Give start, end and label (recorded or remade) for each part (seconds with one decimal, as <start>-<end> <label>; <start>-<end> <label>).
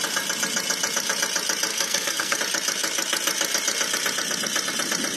0.0-1.7 recorded; 1.7-2.4 remade; 2.4-5.2 recorded